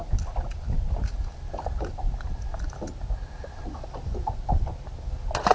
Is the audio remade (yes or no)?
no